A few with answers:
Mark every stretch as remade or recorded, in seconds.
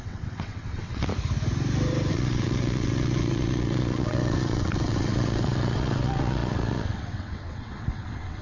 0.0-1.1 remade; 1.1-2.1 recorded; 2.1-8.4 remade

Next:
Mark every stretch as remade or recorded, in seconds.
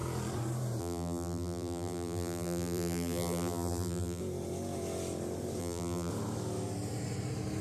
0.0-0.8 recorded; 0.8-4.2 remade; 4.2-5.6 recorded; 5.6-6.1 remade; 6.1-7.6 recorded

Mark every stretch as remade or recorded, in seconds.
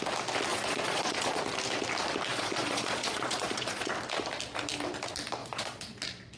0.0-0.5 recorded; 0.5-1.4 remade; 1.4-2.3 recorded; 2.3-3.9 remade; 3.9-5.4 recorded; 5.4-6.0 remade; 6.0-6.4 recorded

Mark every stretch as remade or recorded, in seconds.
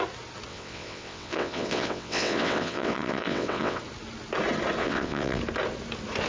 0.0-0.5 recorded; 0.5-3.8 remade; 3.8-4.8 recorded; 4.8-5.4 remade; 5.4-6.3 recorded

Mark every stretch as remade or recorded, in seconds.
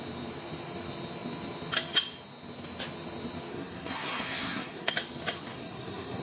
0.0-3.5 recorded; 3.5-4.9 remade; 4.9-5.5 recorded; 5.5-6.2 remade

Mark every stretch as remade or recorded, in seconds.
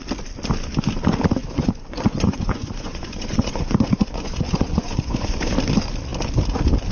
0.0-1.4 recorded; 1.4-5.5 remade; 5.5-6.9 recorded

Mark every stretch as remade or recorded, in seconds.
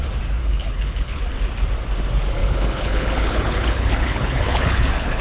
0.0-0.4 recorded; 0.4-1.2 remade; 1.2-2.4 recorded; 2.4-5.2 remade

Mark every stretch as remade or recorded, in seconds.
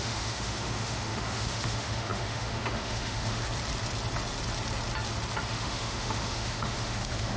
0.0-3.4 remade; 3.4-5.5 recorded; 5.5-7.4 remade